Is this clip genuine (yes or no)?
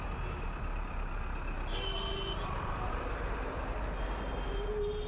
yes